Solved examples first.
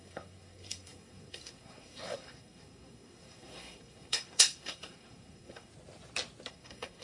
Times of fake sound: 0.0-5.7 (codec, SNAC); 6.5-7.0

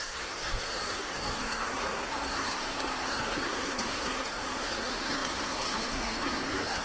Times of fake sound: 0.0-6.8 (codec, SNAC)

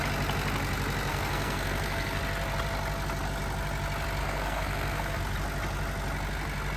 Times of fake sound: 1.1-2.2 (codec, SNAC); 4.2-5.2

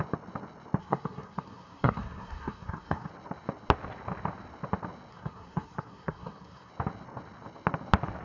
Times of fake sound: 0.8-3.1 (codec, SNAC); 5.1-6.7

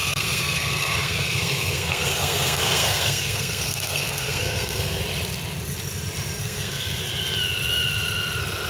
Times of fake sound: 0.0-5.0 (codec, SNAC); 6.4-7.0